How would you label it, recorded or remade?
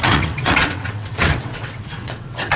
remade